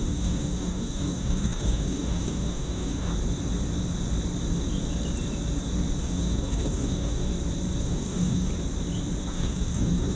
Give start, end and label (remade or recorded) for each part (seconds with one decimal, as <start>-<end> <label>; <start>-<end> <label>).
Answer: 0.0-3.1 remade; 3.1-6.0 recorded; 6.0-7.3 remade; 7.3-7.8 recorded; 7.8-8.5 remade; 8.5-9.3 recorded; 9.3-10.2 remade